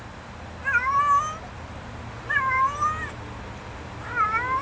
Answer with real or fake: real